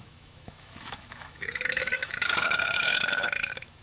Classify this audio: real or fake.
fake